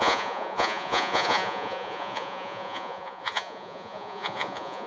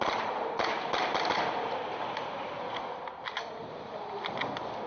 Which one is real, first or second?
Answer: second